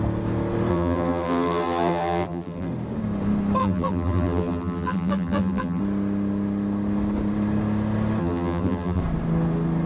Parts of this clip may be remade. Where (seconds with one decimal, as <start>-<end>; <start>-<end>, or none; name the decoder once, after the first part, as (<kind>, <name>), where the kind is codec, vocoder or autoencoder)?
0.7-2.7 (vocoder, BigVGAN v2); 3.6-5.8; 8.2-9.0